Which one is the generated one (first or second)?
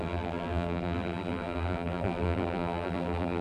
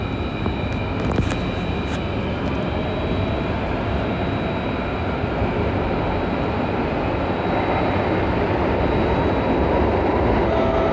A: first